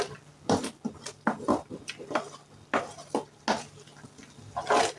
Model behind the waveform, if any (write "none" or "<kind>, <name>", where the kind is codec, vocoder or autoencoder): none